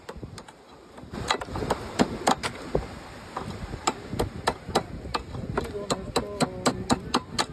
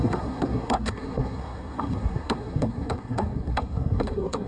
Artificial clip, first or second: second